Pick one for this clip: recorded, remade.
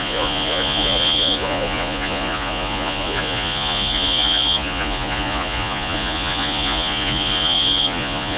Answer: remade